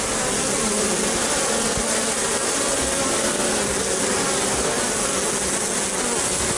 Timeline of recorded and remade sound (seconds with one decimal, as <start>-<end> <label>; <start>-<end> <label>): 0.0-6.6 recorded